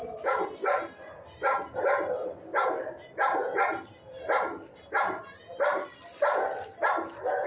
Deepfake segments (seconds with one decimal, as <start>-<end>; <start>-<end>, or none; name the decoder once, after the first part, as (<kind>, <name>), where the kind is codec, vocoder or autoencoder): none